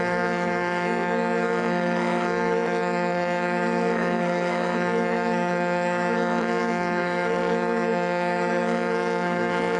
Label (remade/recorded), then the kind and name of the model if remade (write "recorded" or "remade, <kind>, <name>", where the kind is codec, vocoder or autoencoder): remade, codec, SNAC